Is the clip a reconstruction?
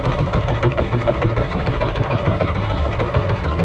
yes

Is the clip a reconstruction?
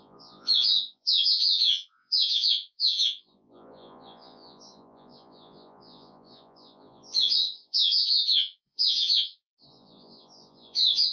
yes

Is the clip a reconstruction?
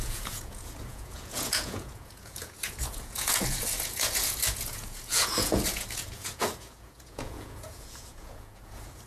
yes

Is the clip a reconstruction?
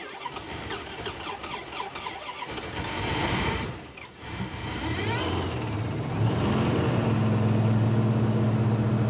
no